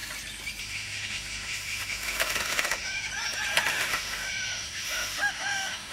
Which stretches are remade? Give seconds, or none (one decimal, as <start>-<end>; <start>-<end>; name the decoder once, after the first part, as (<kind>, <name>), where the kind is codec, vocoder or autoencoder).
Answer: 0.6-3.1 (autoencoder, DAC-VAE); 3.7-5.9